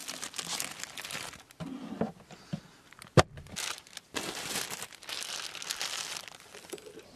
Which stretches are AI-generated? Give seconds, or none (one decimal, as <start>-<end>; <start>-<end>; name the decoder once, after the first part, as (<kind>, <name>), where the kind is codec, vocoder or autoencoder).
none